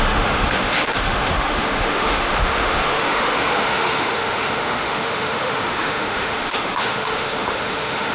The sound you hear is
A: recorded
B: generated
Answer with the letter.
B